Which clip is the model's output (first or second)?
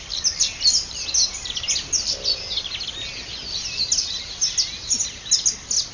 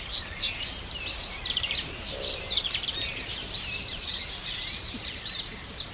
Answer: second